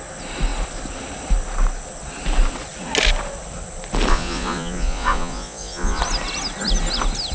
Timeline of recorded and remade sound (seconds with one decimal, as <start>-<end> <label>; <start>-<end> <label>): 0.0-4.1 recorded; 4.1-6.0 remade; 6.0-7.3 recorded